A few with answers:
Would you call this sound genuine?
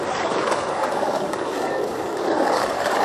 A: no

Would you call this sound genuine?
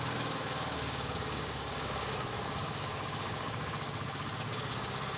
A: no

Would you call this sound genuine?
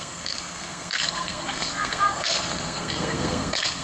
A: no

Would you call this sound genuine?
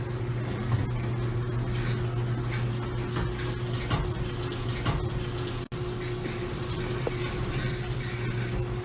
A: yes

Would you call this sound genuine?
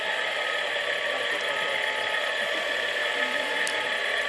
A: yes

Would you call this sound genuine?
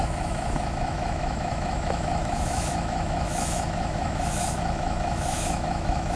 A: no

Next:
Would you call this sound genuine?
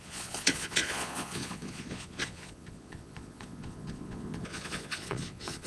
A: no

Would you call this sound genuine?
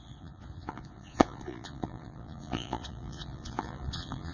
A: no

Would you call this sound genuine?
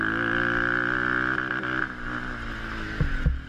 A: yes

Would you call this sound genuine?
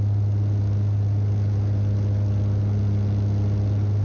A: yes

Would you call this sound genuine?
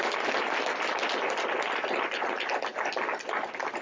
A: yes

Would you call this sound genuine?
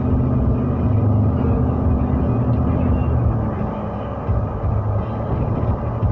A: yes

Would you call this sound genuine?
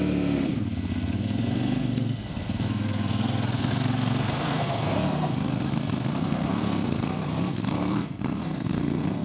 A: no